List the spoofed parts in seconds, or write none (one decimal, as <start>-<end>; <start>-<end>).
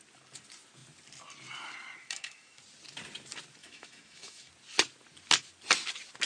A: 2.0-2.6; 3.6-4.5